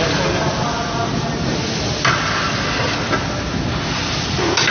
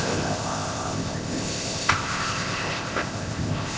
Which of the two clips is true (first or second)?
first